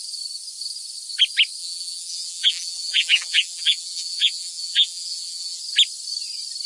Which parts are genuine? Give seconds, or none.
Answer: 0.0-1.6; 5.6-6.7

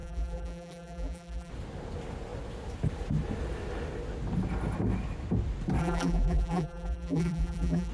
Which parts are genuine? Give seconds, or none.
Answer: 1.5-5.8

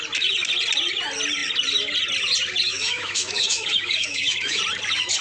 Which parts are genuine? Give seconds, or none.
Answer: 0.0-2.7; 4.6-5.2

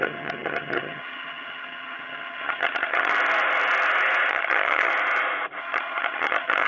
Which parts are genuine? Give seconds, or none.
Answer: 3.1-4.3; 4.9-5.6

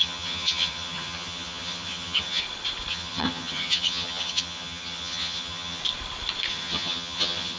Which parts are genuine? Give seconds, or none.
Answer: 2.4-2.9; 5.8-6.5